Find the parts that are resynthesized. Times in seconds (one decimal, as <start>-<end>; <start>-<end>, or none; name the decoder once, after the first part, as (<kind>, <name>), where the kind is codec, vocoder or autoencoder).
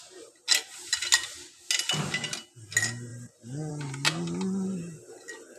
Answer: none